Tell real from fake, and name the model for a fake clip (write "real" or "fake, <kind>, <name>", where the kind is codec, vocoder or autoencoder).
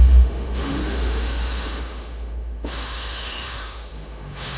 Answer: fake, autoencoder, DAC-VAE